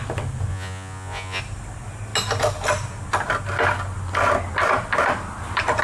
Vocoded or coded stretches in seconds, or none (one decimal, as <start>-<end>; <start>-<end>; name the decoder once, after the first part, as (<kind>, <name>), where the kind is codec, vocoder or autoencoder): 0.5-1.4 (vocoder, Vocos)

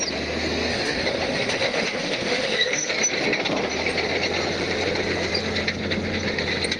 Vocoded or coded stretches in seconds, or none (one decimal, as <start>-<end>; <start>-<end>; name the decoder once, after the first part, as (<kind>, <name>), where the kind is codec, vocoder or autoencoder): 0.7-2.9 (autoencoder, DAC-VAE)

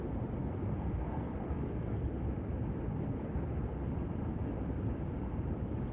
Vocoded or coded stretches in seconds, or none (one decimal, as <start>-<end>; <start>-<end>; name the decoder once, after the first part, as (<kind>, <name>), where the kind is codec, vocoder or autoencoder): 0.4-2.1 (codec, SNAC); 3.0-3.5

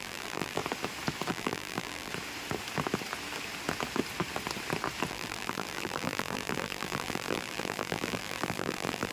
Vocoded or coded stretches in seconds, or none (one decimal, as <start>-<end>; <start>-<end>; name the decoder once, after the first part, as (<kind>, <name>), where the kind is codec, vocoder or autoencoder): 0.0-0.6 (vocoder, BigVGAN v2); 1.3-2.1; 5.1-9.1

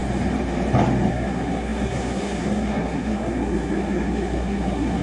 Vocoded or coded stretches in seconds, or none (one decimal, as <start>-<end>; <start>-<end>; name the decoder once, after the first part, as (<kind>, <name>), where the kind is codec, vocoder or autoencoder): 1.1-5.0 (codec, SNAC)

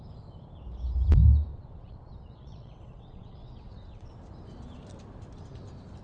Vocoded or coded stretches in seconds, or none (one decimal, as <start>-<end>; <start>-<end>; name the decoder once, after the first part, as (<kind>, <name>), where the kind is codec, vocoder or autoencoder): 1.5-4.1 (vocoder, WaveNeXt)

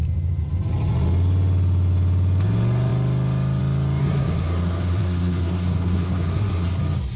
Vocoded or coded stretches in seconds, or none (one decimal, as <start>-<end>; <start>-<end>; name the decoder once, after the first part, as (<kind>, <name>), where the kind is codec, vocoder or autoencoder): 4.0-6.8 (codec, SNAC)

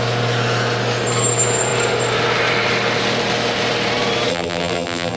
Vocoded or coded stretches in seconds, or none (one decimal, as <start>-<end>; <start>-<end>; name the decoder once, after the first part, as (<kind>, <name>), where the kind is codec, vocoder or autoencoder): 4.3-5.2 (vocoder, BigVGAN v2)